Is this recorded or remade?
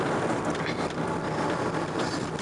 recorded